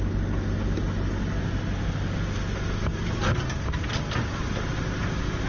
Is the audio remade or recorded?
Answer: recorded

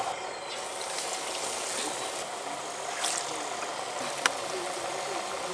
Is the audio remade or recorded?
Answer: recorded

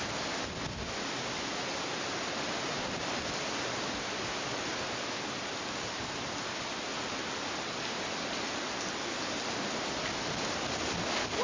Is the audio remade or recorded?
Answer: recorded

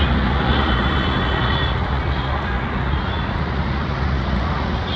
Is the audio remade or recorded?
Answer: remade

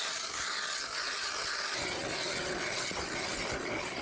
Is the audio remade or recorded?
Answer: recorded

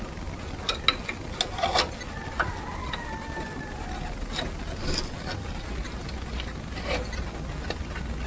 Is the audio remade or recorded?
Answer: recorded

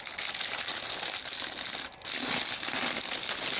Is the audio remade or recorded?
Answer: recorded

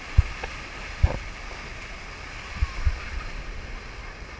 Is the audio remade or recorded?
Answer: recorded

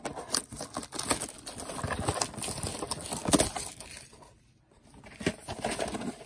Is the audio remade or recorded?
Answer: recorded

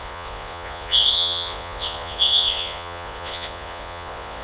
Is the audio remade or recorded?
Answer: remade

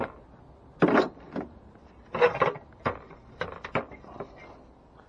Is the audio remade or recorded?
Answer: recorded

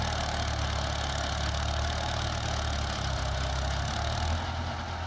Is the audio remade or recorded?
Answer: recorded